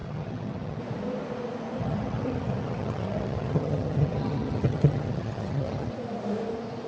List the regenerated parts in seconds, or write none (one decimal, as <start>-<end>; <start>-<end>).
0.0-0.8; 1.8-5.9